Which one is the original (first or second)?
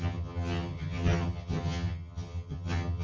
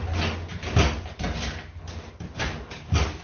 second